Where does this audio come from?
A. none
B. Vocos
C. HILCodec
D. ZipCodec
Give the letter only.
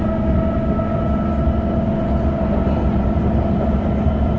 A